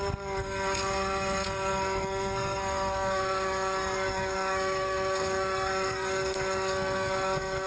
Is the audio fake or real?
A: fake